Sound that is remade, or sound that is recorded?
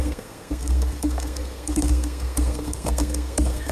remade